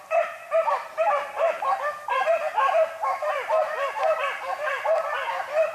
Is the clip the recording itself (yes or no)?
no